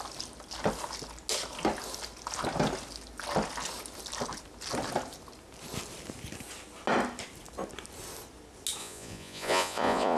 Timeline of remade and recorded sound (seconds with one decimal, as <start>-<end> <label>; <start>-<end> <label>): 0.0-8.8 recorded; 8.8-10.2 remade